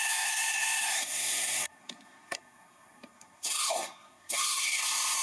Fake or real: fake